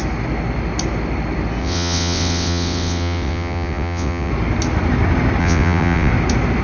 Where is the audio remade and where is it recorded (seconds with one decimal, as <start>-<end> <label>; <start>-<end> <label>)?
0.0-1.6 recorded; 1.6-4.3 remade; 4.3-5.4 recorded; 5.4-6.1 remade; 6.1-6.6 recorded